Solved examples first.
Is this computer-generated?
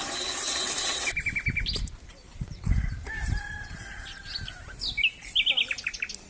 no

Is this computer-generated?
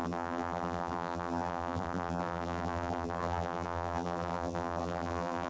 yes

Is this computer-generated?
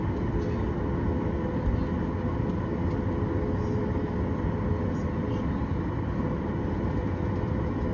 no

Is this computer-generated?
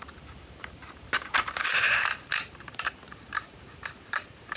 yes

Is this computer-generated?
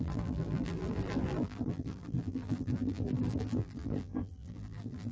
yes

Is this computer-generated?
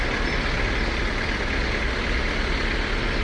no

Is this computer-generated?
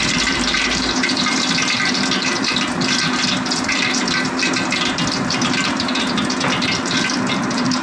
yes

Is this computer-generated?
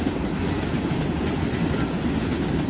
no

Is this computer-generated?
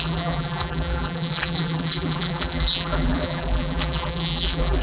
yes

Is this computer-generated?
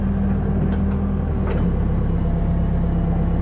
no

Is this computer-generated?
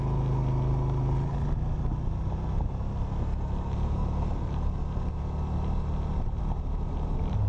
no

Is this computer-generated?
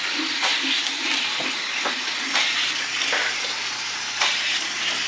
yes